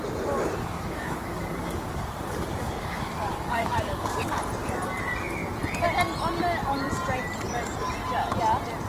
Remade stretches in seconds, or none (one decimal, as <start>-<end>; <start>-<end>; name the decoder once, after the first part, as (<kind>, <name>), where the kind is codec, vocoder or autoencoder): 0.6-4.4 (codec, DAC)